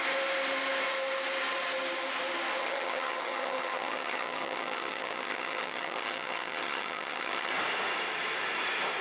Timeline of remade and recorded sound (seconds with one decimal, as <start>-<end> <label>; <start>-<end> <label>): 0.0-2.6 recorded; 2.6-7.5 remade; 7.5-9.0 recorded